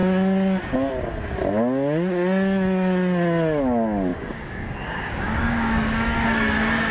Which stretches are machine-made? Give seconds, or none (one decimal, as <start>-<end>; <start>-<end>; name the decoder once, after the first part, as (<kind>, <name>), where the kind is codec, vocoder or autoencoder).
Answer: 4.1-6.9 (codec, DAC)